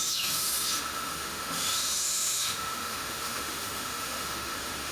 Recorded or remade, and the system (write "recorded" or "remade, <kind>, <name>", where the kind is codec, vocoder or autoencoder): remade, autoencoder, DAC-VAE